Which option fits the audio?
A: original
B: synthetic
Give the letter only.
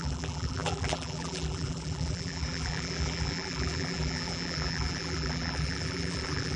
B